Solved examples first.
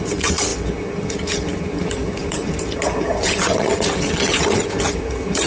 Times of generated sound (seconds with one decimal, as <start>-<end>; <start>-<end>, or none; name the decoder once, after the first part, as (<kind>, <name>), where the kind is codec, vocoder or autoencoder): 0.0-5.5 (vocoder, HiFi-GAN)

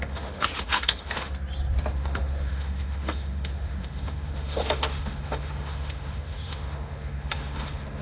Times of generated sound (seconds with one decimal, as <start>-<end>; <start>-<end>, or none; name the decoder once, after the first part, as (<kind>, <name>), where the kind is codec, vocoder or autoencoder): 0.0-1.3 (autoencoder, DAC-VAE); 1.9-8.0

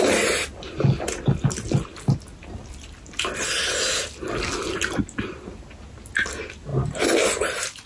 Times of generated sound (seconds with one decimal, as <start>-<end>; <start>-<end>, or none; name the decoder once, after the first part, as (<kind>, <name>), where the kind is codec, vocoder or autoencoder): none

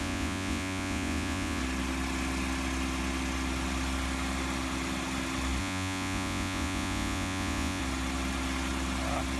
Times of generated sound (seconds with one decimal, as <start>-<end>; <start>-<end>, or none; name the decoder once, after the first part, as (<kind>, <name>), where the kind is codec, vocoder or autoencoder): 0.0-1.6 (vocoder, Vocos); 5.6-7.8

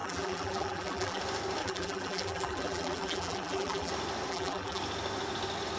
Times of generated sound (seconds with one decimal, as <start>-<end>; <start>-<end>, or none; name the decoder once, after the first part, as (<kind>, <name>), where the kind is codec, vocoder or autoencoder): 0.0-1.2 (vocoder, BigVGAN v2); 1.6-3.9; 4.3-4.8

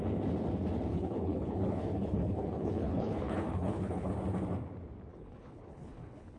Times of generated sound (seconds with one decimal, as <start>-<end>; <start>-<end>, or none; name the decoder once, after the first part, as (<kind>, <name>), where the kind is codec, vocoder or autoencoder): 0.9-4.1 (codec, HILCodec); 5.1-6.4

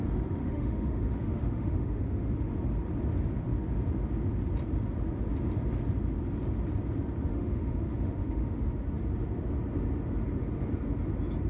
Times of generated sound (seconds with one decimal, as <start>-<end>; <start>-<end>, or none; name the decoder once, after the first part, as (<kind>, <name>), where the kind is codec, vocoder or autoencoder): 0.4-2.5 (autoencoder, DAC-VAE); 7.3-8.7